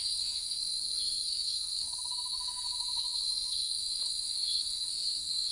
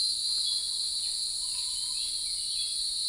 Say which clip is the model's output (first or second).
first